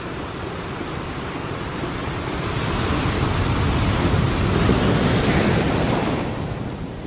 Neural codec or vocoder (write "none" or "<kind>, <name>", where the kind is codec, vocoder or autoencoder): none